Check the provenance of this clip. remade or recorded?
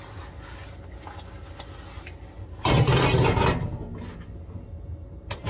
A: recorded